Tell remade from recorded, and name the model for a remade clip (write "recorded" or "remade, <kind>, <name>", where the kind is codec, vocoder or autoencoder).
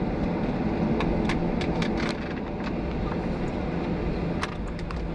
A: recorded